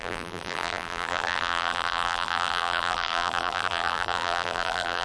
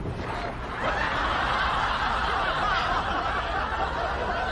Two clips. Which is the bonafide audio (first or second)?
second